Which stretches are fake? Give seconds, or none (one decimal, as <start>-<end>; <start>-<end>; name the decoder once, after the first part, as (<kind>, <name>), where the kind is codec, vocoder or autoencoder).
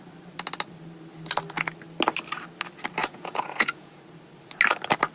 3.0-4.0 (vocoder, Vocos)